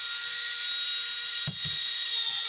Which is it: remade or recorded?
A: remade